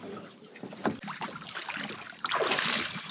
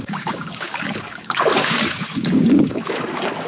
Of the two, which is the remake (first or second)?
second